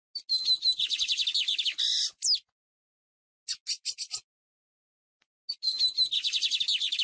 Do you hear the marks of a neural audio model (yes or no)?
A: no